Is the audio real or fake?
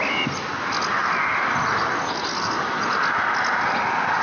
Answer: real